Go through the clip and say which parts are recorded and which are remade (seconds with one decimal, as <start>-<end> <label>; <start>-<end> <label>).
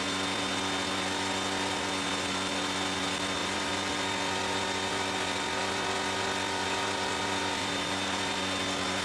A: 0.0-3.4 recorded; 3.4-3.9 remade; 3.9-7.6 recorded; 7.6-8.4 remade; 8.4-9.0 recorded